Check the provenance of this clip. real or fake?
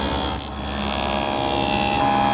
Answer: real